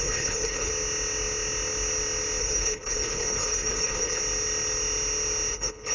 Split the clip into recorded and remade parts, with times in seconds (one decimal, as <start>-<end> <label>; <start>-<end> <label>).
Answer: 0.0-0.7 remade; 0.7-2.4 recorded; 2.4-4.2 remade; 4.2-5.5 recorded; 5.5-5.9 remade